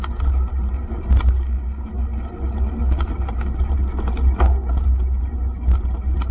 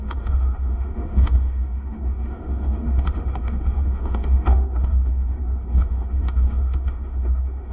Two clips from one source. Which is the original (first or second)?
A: first